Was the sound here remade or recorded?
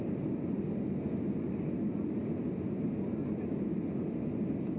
recorded